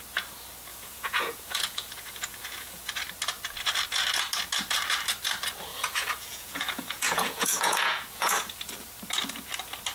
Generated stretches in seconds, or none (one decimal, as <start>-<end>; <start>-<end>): 0.7-2.9; 5.7-8.5